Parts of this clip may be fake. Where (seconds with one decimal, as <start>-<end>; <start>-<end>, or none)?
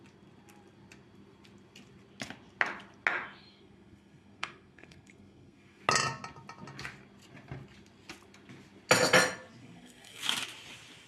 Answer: 3.4-5.8; 9.6-10.2